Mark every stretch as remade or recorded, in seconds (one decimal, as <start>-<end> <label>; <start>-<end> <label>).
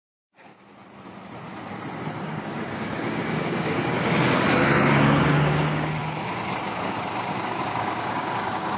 0.0-0.5 remade; 0.5-2.2 recorded; 2.2-8.8 remade